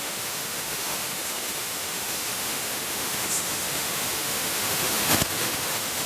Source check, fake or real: fake